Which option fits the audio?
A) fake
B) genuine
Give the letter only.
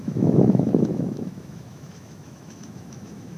A